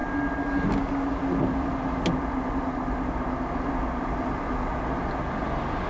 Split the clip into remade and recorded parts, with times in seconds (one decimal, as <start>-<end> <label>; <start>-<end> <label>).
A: 0.0-5.9 recorded